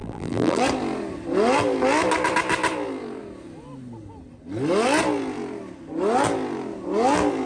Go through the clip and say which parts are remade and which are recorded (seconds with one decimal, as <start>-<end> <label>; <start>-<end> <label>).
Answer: 0.0-0.6 remade; 0.6-7.5 recorded

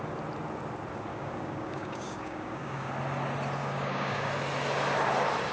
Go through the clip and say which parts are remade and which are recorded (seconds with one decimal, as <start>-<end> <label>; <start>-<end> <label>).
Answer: 0.0-1.1 recorded; 1.1-2.9 remade; 2.9-3.6 recorded; 3.6-4.3 remade; 4.3-5.5 recorded

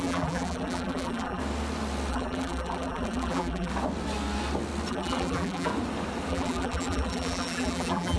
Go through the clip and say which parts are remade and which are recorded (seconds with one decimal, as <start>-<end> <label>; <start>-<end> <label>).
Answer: 0.0-1.4 remade; 1.4-2.1 recorded; 2.1-3.7 remade; 3.7-4.9 recorded; 4.9-5.7 remade; 5.7-6.3 recorded; 6.3-8.2 remade

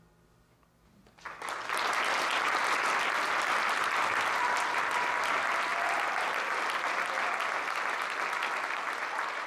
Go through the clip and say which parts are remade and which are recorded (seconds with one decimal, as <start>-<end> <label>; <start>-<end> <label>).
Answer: 0.0-9.5 recorded